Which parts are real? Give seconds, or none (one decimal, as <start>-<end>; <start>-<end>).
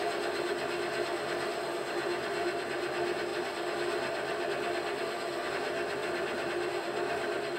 0.0-7.6